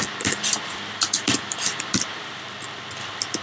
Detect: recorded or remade remade